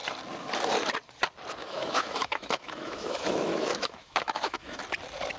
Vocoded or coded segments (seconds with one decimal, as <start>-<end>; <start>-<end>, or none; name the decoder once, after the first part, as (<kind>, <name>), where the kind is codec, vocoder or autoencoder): 1.6-4.8 (autoencoder, DAC-VAE)